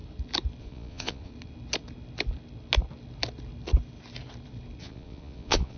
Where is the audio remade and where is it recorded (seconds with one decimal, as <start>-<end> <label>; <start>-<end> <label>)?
0.0-0.6 recorded; 0.6-1.3 remade; 1.3-4.8 recorded; 4.8-5.8 remade